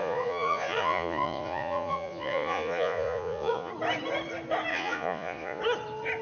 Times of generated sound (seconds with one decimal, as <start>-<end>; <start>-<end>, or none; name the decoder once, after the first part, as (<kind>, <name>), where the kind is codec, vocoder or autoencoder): 0.0-3.7 (vocoder, Vocos); 4.7-5.6